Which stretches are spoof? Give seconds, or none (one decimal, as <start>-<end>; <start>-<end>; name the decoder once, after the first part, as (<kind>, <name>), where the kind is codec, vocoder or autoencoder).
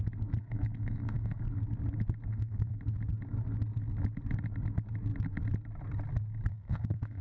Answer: 0.4-1.4 (codec, SNAC); 2.3-2.8; 6.5-7.2